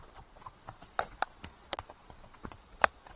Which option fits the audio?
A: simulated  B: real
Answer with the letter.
A